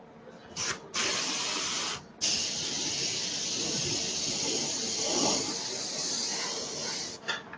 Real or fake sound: real